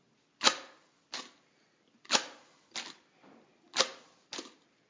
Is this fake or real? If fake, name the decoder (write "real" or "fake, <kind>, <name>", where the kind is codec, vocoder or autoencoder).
real